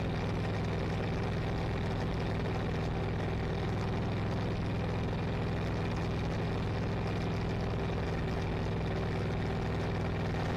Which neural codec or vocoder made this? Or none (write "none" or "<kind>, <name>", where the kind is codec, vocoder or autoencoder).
none